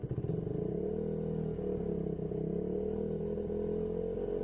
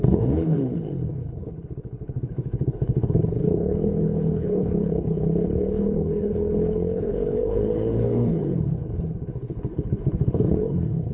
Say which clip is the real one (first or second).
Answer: first